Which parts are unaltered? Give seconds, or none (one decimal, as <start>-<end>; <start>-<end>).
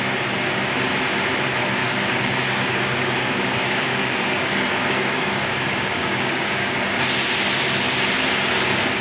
0.0-1.8; 7.0-9.0